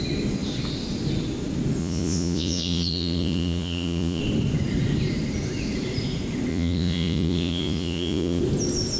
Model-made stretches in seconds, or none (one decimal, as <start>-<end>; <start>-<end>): 1.8-4.2; 6.5-8.4